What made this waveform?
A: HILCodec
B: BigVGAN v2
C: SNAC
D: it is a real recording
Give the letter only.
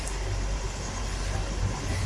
D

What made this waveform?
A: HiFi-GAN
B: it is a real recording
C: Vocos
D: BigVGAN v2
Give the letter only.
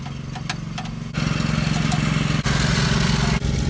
B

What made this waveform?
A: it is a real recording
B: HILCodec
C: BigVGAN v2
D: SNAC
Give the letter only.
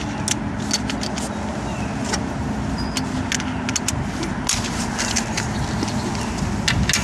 A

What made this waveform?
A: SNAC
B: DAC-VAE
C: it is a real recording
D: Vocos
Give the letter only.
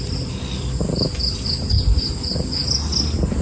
C